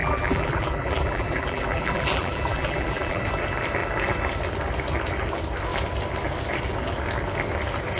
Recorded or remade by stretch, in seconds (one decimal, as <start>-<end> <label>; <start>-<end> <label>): 0.0-3.2 remade; 3.2-8.0 recorded